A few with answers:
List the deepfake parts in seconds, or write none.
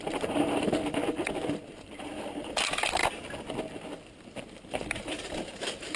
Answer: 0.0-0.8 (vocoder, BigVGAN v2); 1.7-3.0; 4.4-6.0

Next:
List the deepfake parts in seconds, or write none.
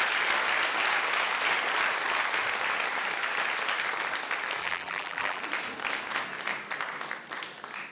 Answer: 4.6-5.4 (vocoder, BigVGAN v2)